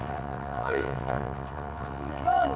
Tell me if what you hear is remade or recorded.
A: remade